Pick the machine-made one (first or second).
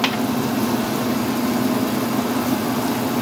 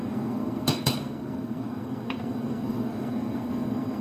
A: second